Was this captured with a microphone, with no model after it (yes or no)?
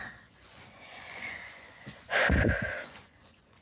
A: no